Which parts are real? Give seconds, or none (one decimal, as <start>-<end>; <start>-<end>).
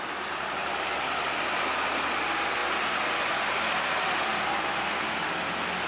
0.0-5.9